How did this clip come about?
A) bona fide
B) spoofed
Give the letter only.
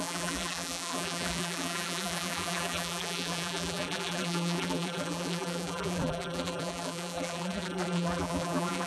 B